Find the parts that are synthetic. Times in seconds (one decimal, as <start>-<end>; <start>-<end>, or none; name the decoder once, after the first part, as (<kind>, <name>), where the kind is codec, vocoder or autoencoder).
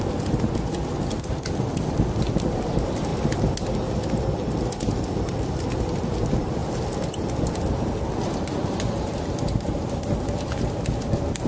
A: none